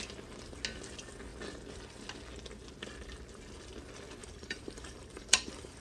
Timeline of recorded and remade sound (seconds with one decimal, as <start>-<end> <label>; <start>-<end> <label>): 0.0-4.2 recorded; 4.2-5.8 remade